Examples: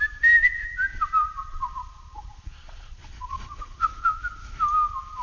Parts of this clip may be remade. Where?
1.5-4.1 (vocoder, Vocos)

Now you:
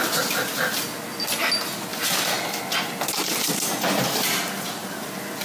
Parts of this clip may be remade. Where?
none

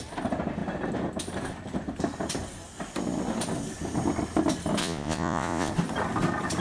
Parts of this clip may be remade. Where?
4.8-5.7 (vocoder, Vocos)

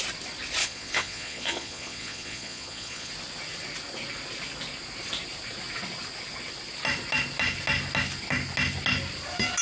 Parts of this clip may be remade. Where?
0.6-3.1 (vocoder, Vocos)